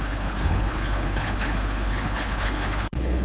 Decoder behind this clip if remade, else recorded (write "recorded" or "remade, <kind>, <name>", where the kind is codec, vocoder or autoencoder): remade, codec, HILCodec